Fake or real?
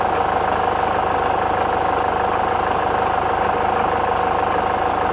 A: real